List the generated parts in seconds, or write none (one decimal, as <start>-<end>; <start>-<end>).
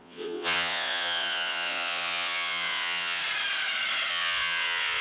0.0-3.2; 4.1-5.0